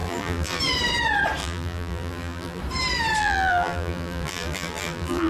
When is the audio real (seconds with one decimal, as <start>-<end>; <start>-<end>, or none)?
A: 0.6-1.4; 2.6-3.2